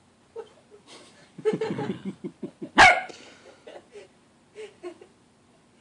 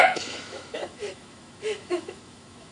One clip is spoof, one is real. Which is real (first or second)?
first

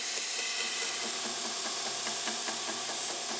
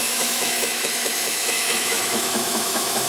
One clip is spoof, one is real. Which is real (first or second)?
first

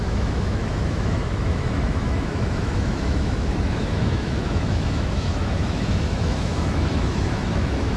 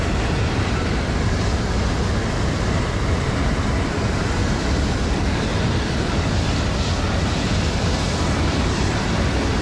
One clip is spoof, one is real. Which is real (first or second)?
second